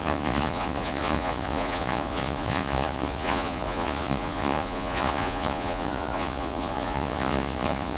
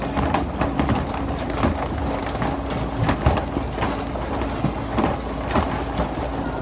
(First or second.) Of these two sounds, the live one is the second